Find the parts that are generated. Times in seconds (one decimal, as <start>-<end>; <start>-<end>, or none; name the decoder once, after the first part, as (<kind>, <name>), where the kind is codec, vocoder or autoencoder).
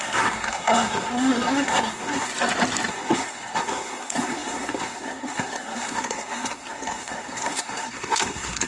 0.0-2.3 (codec, SNAC); 2.9-8.7